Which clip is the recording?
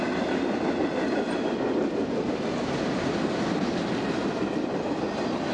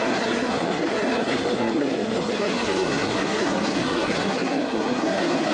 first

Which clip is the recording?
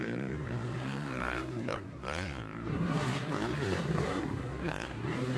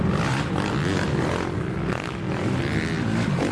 second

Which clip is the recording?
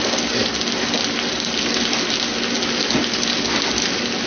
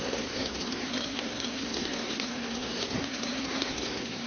first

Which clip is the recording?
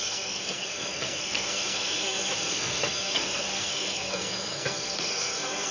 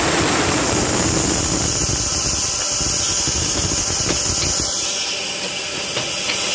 second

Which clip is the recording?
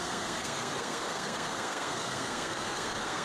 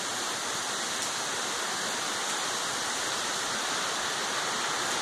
second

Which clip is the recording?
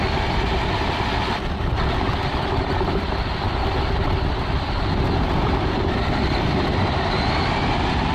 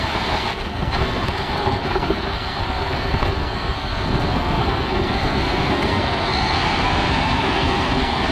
first